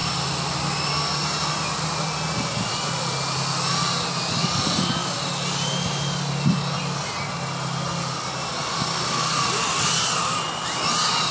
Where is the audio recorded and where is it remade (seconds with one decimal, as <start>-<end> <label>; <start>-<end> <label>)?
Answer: 0.0-11.3 recorded